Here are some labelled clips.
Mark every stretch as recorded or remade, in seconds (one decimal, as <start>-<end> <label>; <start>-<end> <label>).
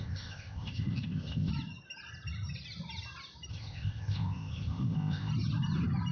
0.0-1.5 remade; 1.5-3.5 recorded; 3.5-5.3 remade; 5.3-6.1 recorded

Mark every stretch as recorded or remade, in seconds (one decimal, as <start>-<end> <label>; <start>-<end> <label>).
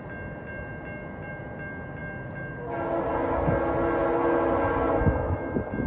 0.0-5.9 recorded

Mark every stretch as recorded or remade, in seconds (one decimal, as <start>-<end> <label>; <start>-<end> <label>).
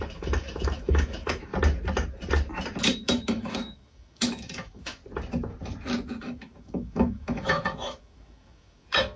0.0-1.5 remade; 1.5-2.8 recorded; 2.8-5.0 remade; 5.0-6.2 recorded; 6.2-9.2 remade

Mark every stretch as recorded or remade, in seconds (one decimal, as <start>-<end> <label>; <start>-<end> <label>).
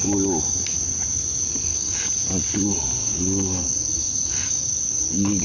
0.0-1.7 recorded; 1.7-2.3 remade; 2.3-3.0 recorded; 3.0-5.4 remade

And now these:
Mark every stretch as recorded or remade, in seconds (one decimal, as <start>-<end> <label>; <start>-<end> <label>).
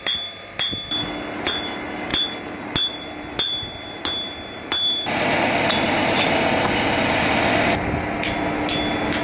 0.0-9.2 recorded